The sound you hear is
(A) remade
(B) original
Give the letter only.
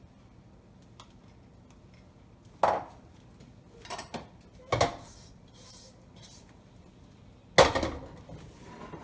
B